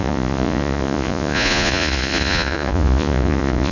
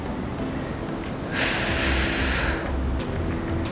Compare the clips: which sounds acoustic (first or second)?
second